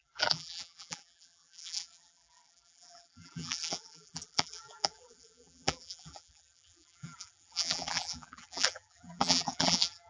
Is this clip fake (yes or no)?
yes